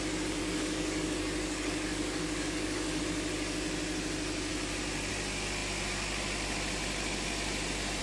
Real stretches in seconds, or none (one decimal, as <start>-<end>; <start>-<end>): 0.0-0.4; 3.0-8.0